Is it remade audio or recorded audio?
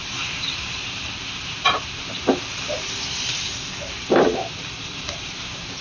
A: remade